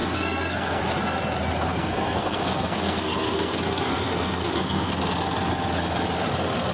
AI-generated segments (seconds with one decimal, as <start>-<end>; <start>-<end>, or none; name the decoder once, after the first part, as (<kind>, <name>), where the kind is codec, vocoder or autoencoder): 0.0-0.8 (codec, SNAC); 1.7-4.9